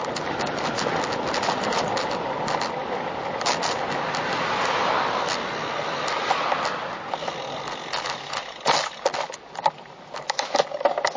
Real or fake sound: real